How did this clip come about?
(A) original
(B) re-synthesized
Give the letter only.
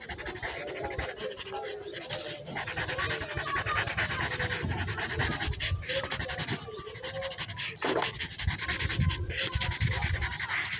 A